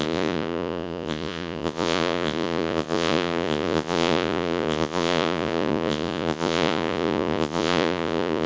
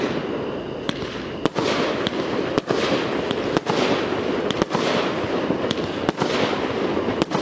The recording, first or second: second